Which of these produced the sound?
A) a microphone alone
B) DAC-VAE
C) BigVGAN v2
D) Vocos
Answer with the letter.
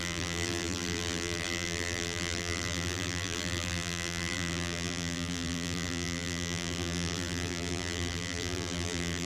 C